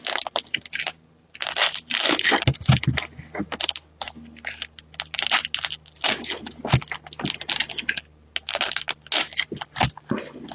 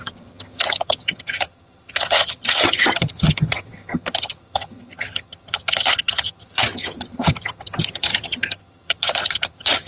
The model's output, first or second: second